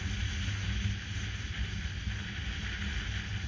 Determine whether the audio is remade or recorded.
recorded